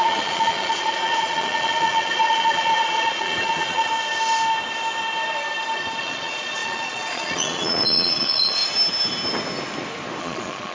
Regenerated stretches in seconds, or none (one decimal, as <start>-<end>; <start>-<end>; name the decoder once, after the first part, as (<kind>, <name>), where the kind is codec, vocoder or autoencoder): 0.0-3.9 (vocoder, Vocos); 6.0-8.6; 10.2-10.7